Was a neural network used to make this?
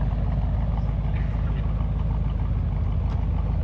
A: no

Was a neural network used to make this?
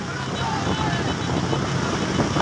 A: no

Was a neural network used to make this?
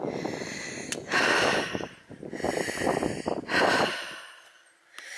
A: no